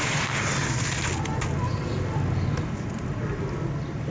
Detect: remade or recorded recorded